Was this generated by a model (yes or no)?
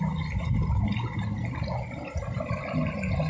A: no